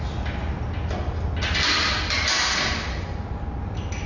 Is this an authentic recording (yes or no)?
yes